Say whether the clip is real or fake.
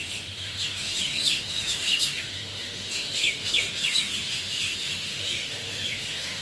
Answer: fake